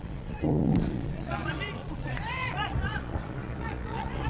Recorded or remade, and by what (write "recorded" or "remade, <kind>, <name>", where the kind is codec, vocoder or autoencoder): remade, vocoder, Vocos